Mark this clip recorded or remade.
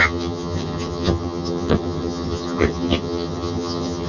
remade